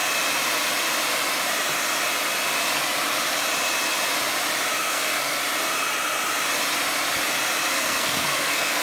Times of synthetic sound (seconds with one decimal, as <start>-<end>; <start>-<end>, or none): 4.8-5.4; 7.7-8.8